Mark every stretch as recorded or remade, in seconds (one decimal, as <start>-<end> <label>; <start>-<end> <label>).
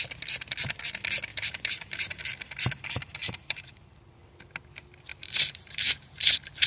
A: 0.0-1.3 recorded; 1.3-2.2 remade; 2.2-3.2 recorded; 3.2-3.9 remade; 3.9-5.1 recorded; 5.1-6.7 remade